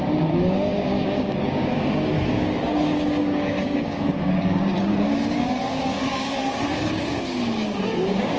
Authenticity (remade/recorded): remade